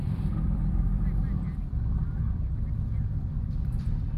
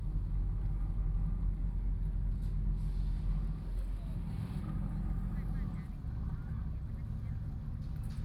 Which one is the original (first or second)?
second